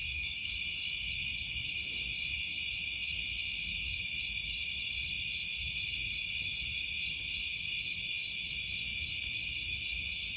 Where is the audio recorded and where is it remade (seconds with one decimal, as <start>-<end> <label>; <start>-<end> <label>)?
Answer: 0.0-0.5 remade; 0.5-10.4 recorded